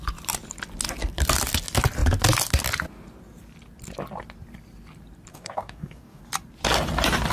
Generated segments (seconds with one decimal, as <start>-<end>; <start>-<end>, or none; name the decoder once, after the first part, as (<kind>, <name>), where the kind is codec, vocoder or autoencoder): 5.3-6.2 (codec, DAC)